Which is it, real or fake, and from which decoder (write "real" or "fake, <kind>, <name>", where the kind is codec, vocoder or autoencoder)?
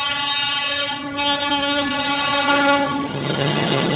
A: fake, vocoder, HiFi-GAN